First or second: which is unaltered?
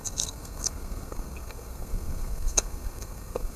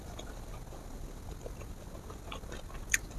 second